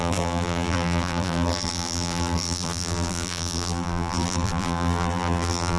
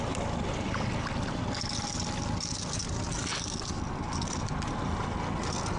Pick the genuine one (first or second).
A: second